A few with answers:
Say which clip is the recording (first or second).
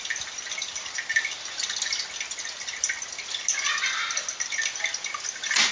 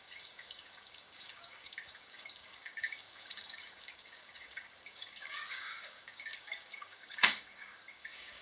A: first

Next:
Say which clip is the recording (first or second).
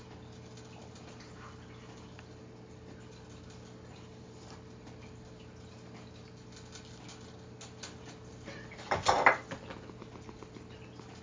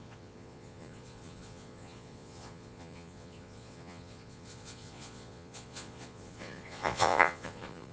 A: first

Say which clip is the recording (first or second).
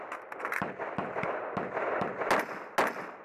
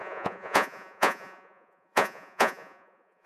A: first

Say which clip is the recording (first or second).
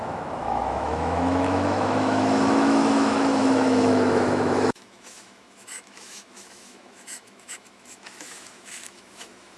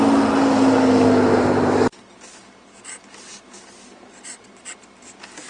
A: second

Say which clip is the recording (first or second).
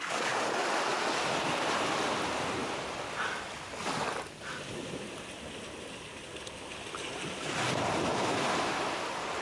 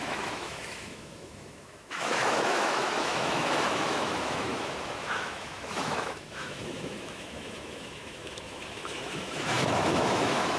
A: first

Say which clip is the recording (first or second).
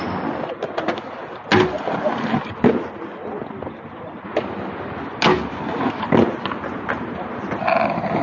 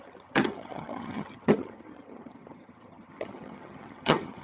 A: first